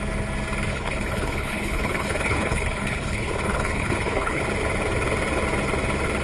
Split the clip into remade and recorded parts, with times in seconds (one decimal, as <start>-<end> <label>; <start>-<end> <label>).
0.0-0.7 recorded; 0.7-4.4 remade; 4.4-6.2 recorded